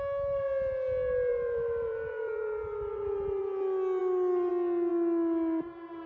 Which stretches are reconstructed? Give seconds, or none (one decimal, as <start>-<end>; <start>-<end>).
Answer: 1.3-3.4

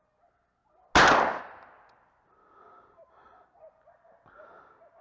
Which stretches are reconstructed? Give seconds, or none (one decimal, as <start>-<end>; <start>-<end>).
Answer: none

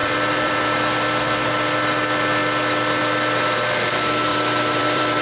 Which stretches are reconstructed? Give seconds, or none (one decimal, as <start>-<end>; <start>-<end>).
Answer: 0.0-0.6; 4.3-5.2